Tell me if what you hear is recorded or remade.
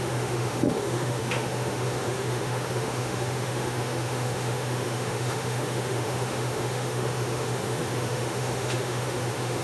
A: remade